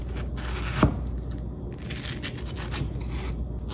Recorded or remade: recorded